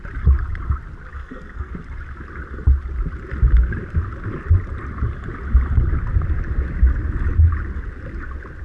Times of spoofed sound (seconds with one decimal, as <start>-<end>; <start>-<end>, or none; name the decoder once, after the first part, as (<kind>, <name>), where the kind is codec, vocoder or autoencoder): 1.1-1.7 (codec, SNAC)